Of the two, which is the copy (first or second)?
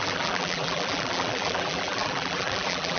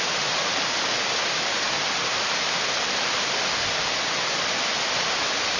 first